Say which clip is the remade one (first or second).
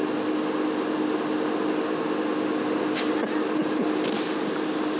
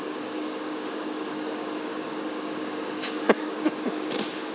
second